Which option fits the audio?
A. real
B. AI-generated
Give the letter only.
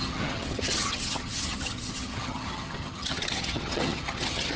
B